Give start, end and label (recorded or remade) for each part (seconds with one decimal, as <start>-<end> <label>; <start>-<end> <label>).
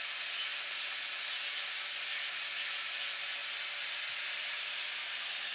0.0-5.5 recorded